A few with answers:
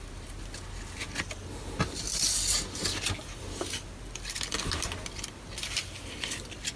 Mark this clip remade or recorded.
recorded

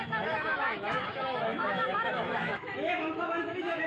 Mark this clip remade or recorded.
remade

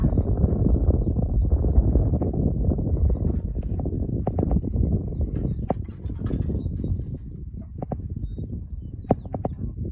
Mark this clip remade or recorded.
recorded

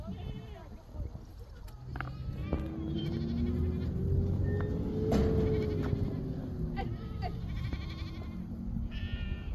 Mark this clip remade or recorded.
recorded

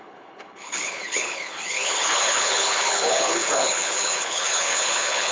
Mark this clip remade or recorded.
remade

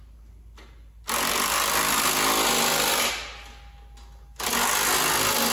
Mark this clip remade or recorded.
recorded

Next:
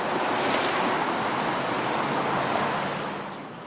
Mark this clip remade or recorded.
recorded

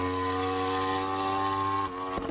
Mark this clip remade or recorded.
recorded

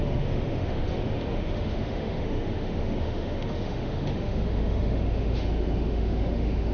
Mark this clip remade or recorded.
remade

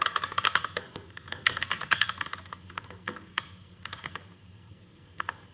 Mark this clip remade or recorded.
remade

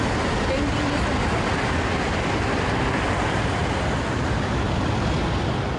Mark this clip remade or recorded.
recorded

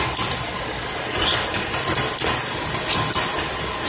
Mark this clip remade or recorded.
recorded